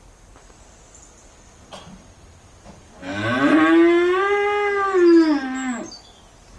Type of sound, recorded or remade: recorded